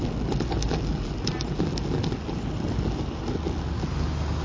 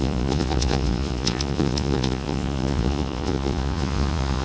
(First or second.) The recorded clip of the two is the first